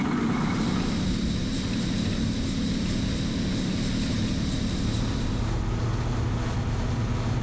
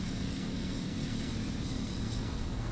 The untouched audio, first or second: first